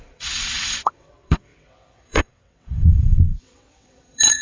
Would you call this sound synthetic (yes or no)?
yes